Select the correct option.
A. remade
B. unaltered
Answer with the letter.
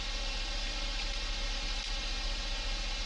B